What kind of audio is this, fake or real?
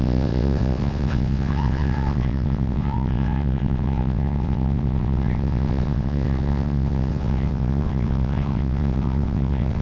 fake